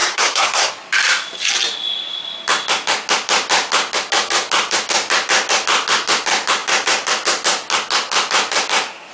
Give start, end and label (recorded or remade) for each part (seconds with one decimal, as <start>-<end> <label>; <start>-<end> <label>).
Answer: 0.0-0.7 remade; 0.7-9.1 recorded